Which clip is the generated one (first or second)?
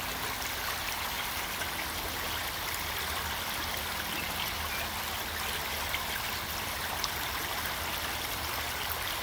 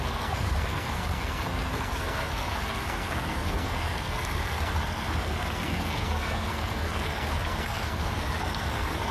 second